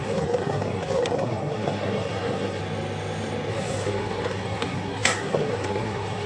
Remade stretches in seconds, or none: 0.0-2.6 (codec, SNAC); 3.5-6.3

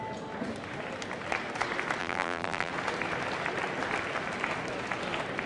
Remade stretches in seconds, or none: 2.0-2.7 (vocoder, BigVGAN v2)

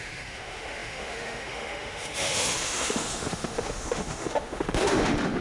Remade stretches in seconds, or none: 0.0-5.4 (autoencoder, DAC-VAE)

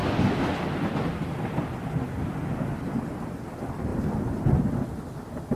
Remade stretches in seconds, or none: none